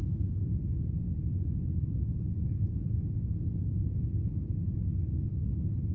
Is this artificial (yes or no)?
no